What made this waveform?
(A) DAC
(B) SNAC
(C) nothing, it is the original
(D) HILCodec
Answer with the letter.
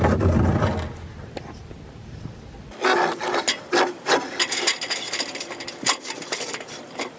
C